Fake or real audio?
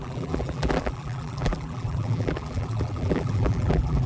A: fake